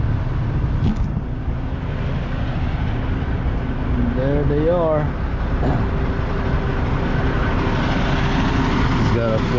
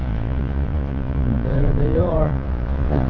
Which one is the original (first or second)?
first